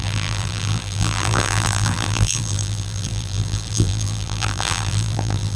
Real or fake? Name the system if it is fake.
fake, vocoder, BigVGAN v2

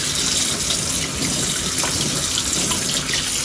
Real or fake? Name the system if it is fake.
real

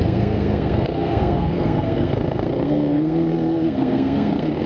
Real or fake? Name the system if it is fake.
fake, codec, SNAC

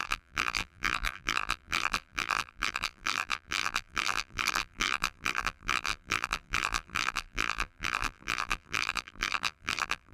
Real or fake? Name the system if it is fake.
fake, vocoder, BigVGAN v2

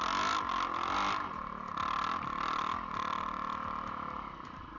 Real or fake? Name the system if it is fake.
real